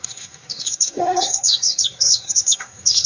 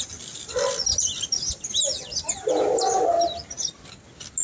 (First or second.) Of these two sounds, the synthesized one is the first